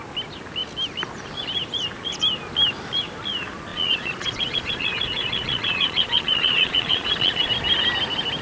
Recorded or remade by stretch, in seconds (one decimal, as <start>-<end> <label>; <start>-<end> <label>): 0.0-3.7 recorded; 3.7-7.5 remade; 7.5-8.4 recorded